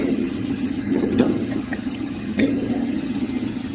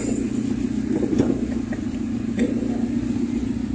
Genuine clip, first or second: second